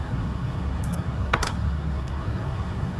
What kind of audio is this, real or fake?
fake